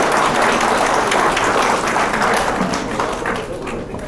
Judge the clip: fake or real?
real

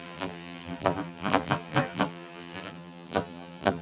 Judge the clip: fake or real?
fake